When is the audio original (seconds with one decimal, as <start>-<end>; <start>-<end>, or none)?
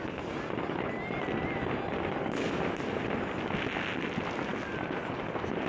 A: 0.0-5.7